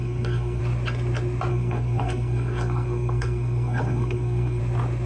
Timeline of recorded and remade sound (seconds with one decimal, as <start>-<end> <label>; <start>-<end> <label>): 0.0-0.6 remade; 0.6-1.5 recorded; 1.5-4.6 remade; 4.6-5.1 recorded